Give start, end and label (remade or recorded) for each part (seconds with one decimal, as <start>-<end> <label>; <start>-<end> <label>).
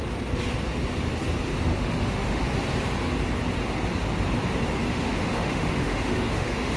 0.0-1.7 recorded; 1.7-2.4 remade; 2.4-4.9 recorded; 4.9-6.8 remade